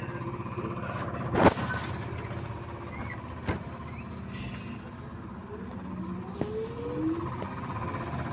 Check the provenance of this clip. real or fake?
real